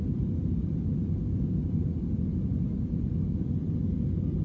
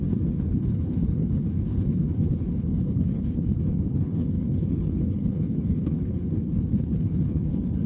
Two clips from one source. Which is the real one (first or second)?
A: first